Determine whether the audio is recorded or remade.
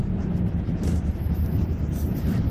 remade